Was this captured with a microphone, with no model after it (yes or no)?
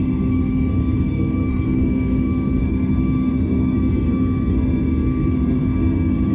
no